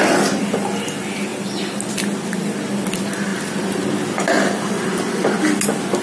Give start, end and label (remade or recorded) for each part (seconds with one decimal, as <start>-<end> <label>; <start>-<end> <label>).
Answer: 0.0-6.0 recorded